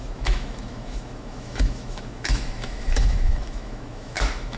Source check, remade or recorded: remade